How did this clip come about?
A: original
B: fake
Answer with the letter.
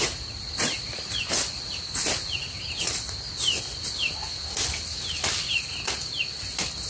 A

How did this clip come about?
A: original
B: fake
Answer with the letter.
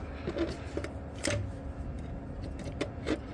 A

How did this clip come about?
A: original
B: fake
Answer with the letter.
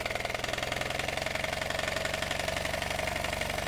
A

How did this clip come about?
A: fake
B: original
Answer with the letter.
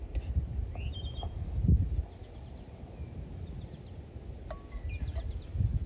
B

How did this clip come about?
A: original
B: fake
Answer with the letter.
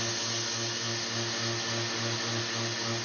A